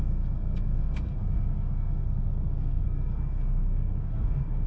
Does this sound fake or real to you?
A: fake